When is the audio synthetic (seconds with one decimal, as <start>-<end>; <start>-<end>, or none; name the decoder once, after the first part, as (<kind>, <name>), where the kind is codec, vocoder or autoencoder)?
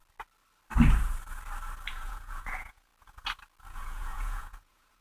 1.9-2.9 (vocoder, Vocos); 3.7-5.0